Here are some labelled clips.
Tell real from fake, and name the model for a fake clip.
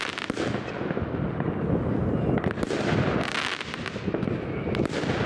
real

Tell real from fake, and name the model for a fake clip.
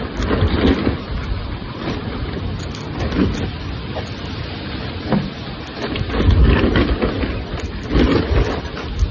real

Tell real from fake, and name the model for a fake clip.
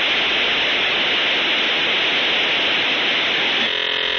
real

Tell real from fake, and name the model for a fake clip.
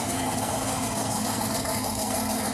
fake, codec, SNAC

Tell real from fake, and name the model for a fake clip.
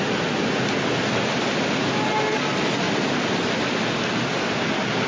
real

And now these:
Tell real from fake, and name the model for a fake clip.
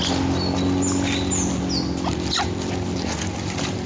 real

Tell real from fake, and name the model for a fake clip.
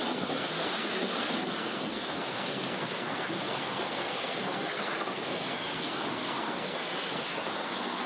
fake, codec, SNAC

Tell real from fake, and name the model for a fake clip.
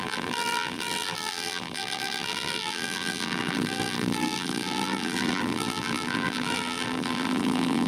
fake, vocoder, BigVGAN v2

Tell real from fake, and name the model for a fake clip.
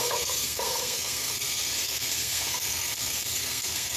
fake, codec, SNAC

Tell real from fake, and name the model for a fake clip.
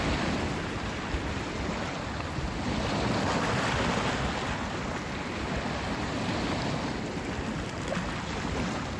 real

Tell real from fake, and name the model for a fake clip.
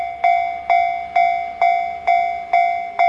real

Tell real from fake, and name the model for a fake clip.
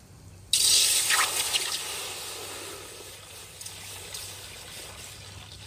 real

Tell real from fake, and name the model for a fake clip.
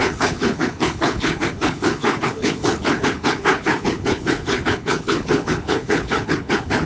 fake, codec, HILCodec